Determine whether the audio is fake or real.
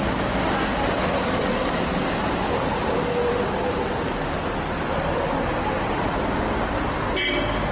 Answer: real